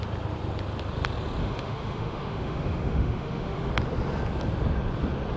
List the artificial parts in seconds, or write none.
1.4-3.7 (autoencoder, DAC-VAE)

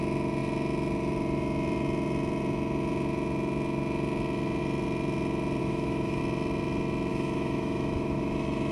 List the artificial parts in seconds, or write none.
5.6-6.2 (autoencoder, DAC-VAE); 7.1-8.7

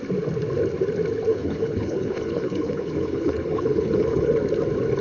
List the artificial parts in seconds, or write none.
1.3-4.3 (codec, HILCodec)

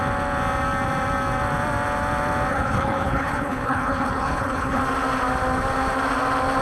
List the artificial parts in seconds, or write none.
2.5-4.8 (codec, HILCodec)

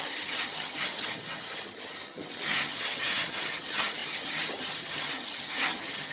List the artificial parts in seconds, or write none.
0.0-6.1 (vocoder, HiFi-GAN)

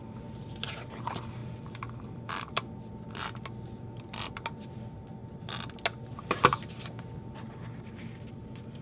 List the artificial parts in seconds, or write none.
none